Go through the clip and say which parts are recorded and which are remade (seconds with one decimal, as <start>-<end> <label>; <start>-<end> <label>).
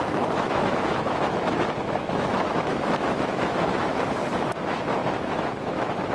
0.0-6.1 remade